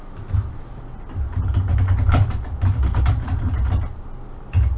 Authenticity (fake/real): real